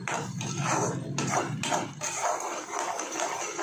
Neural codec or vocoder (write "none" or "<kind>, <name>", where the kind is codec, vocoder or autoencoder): vocoder, BigVGAN v2